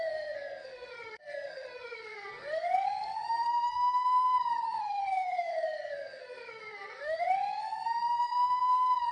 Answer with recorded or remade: remade